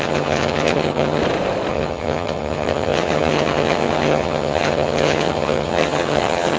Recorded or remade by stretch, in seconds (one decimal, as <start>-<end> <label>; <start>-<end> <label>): 0.0-1.2 remade; 1.2-1.7 recorded; 1.7-6.6 remade